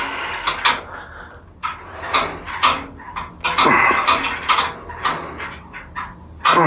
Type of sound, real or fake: real